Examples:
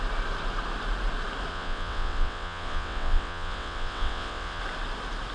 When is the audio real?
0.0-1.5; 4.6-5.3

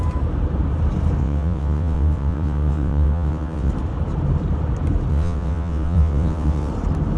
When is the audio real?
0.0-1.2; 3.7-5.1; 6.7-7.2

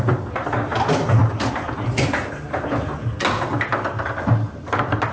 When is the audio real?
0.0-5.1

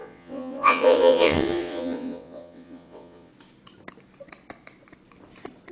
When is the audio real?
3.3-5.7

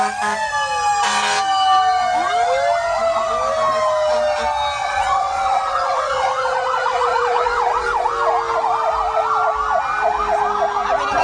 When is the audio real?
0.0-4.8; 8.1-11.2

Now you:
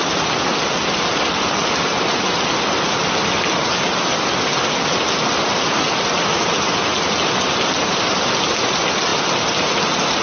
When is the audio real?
0.0-10.2

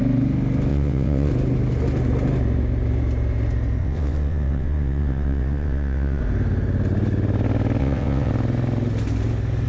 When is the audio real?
0.0-0.7; 1.3-3.8; 6.2-7.8; 8.3-9.7

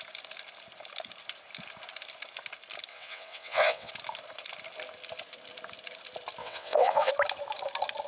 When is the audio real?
0.0-2.9; 3.9-6.4; 7.1-8.1